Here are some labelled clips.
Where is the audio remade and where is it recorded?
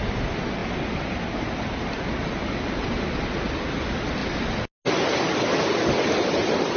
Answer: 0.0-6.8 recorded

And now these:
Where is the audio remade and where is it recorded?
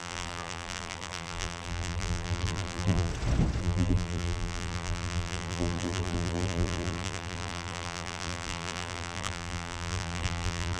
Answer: 0.0-3.1 remade; 3.1-3.6 recorded; 3.6-10.8 remade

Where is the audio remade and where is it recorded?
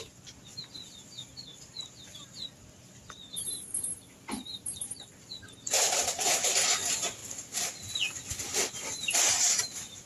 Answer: 0.0-10.1 recorded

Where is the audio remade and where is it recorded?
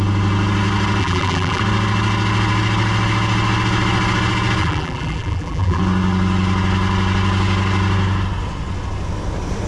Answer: 0.0-1.0 recorded; 1.0-1.6 remade; 1.6-4.6 recorded; 4.6-5.8 remade; 5.8-9.7 recorded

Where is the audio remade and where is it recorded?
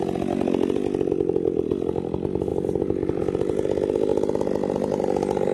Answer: 0.0-4.1 recorded; 4.1-5.5 remade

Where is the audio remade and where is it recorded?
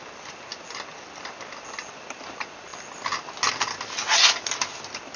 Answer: 0.0-5.2 recorded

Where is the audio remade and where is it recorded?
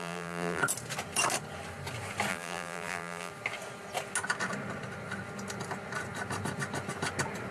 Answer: 0.0-0.6 remade; 0.6-2.3 recorded; 2.3-3.3 remade; 3.3-7.5 recorded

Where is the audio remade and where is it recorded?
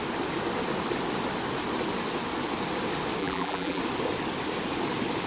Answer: 0.0-3.2 recorded; 3.2-3.8 remade; 3.8-5.3 recorded